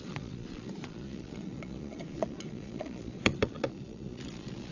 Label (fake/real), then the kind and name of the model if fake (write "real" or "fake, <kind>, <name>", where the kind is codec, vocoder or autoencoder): fake, vocoder, Vocos